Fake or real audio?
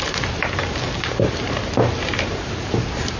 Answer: real